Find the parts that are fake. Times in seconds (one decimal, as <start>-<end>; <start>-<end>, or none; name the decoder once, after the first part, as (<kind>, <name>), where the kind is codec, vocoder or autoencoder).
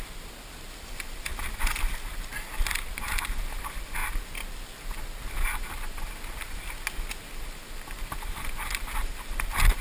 none